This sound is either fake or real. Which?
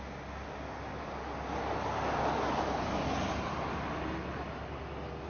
real